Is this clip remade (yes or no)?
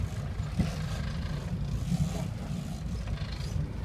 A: no